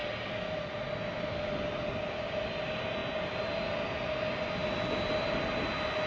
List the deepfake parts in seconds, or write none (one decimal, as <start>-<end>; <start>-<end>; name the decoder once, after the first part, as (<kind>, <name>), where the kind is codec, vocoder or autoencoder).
none